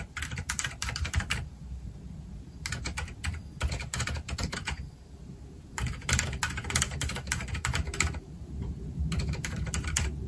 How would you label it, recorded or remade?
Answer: remade